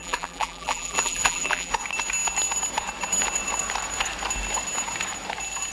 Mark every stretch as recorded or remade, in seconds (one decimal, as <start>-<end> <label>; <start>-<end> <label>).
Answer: 0.0-1.7 remade; 1.7-5.7 recorded